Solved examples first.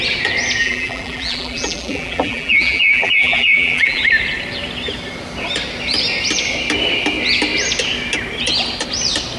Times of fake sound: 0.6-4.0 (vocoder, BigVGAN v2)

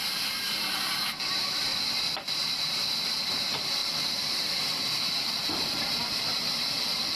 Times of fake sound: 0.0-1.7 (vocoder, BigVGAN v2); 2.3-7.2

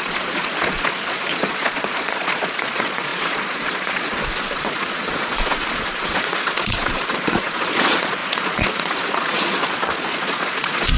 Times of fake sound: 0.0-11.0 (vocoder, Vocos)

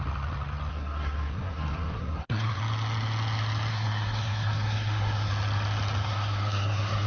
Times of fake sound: 0.7-2.6 (codec, SNAC); 3.7-5.3; 6.0-7.1